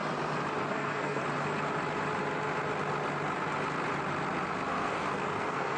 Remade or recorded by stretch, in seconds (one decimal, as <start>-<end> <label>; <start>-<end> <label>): 0.0-0.7 recorded; 0.7-1.2 remade; 1.2-4.7 recorded; 4.7-5.8 remade